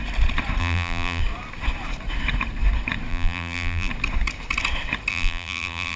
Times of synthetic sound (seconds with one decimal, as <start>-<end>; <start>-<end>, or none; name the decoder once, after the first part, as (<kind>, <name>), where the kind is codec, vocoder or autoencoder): 0.6-1.2 (vocoder, BigVGAN v2); 3.1-3.9; 5.1-6.0